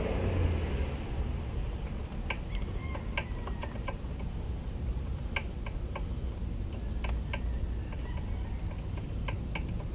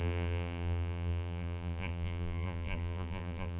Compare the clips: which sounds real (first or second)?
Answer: first